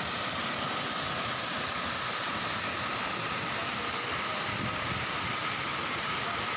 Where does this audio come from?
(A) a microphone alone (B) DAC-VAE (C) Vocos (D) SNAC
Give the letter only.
A